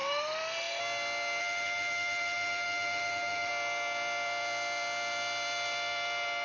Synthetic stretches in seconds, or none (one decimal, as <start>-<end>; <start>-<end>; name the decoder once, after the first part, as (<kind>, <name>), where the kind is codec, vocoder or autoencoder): 0.0-0.8 (autoencoder, DAC-VAE); 1.4-3.5